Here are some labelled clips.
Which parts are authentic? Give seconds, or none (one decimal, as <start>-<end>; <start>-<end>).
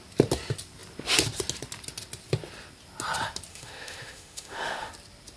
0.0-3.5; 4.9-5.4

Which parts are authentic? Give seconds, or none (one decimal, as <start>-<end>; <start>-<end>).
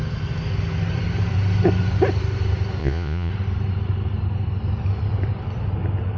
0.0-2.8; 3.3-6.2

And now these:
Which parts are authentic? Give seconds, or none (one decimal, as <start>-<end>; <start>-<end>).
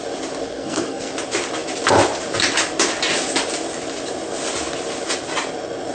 0.0-0.4; 1.1-5.9